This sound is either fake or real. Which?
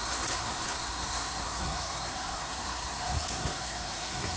fake